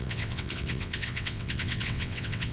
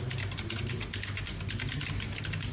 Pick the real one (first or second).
second